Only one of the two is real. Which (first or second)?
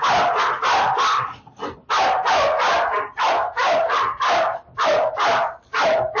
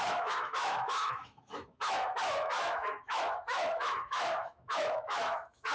first